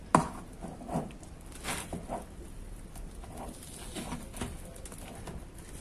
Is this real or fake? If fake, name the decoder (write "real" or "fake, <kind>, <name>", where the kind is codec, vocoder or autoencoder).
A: real